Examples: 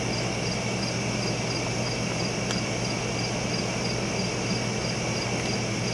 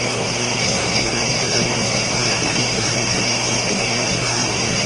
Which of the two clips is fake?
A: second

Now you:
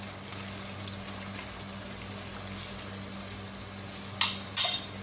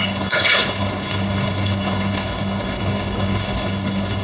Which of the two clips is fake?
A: second